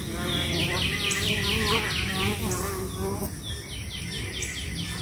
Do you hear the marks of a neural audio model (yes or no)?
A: no